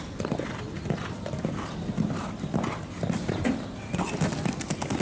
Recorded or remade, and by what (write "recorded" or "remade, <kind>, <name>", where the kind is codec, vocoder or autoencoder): recorded